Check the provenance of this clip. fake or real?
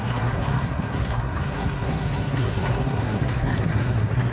fake